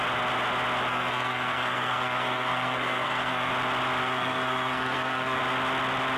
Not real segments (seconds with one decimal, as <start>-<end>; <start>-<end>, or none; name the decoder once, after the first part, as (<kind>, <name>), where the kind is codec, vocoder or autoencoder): 0.9-3.5 (codec, SNAC); 4.0-5.4